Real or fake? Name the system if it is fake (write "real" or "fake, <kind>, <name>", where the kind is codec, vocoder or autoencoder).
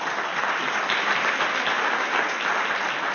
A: real